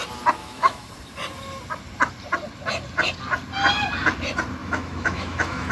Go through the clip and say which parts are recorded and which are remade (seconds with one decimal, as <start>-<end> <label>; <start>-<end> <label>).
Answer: 0.0-0.4 recorded; 0.4-0.9 remade; 0.9-4.6 recorded; 4.6-5.7 remade